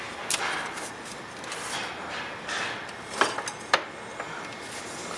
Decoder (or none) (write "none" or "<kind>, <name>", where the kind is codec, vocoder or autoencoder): none